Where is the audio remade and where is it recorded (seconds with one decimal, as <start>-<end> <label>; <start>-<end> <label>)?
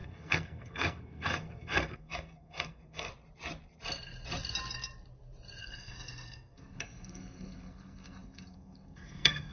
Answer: 0.0-3.1 remade; 3.1-5.6 recorded; 5.6-9.5 remade